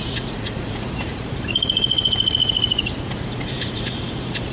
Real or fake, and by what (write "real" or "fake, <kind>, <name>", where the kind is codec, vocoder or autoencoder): fake, vocoder, Vocos